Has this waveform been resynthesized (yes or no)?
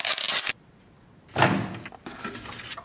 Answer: no